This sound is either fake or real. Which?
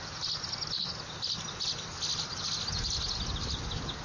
real